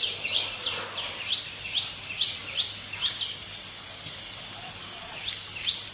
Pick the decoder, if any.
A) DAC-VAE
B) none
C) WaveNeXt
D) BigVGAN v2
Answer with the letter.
B